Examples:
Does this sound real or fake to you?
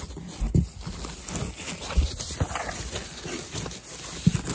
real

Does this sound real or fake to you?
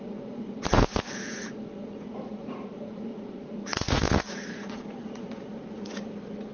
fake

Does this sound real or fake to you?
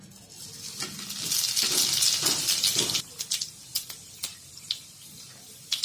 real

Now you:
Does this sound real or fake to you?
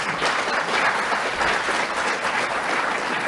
real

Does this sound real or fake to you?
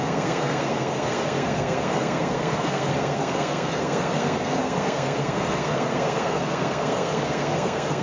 fake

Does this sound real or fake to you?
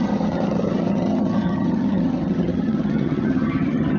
fake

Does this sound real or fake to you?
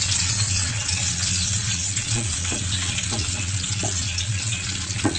fake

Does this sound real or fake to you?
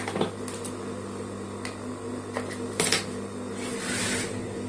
real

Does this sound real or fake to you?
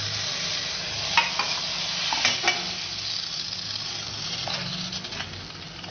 real